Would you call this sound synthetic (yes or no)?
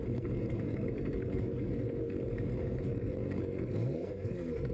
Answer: yes